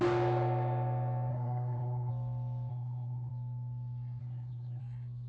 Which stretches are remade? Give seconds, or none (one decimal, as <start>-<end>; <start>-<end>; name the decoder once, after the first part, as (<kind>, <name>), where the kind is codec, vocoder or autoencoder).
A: 1.3-2.1 (codec, SNAC); 2.7-3.3; 4.2-4.8